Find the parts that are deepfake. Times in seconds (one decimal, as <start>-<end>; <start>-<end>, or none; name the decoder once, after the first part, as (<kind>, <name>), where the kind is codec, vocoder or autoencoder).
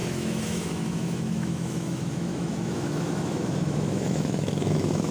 0.0-5.1 (autoencoder, DAC-VAE)